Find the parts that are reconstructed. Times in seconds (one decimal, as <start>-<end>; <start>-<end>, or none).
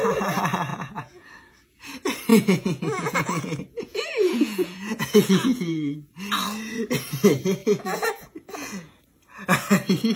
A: 0.7-1.3; 2.3-6.1; 7.6-8.9